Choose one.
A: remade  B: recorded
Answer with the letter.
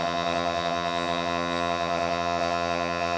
A